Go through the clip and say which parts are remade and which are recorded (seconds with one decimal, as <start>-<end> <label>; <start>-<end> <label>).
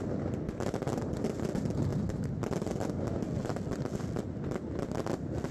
0.0-5.5 recorded